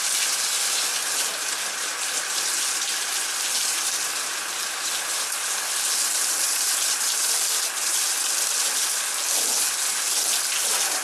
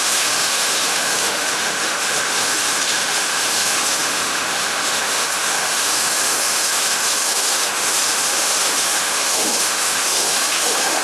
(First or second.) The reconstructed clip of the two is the second